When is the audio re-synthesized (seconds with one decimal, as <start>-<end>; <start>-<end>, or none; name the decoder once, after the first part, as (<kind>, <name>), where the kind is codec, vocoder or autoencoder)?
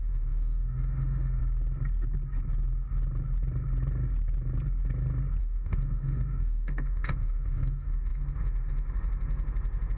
0.0-1.4 (autoencoder, DAC-VAE); 5.4-10.0